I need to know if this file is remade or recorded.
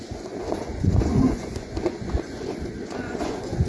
remade